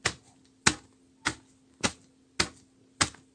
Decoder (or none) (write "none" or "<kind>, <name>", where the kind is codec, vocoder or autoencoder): none